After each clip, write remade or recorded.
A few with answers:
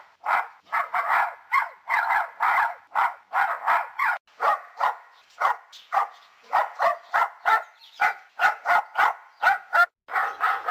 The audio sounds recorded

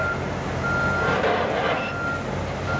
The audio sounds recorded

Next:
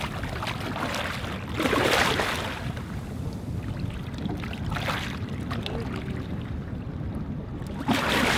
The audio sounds recorded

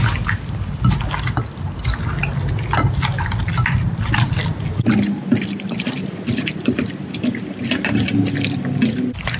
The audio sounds recorded